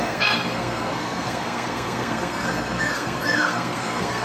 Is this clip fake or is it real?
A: fake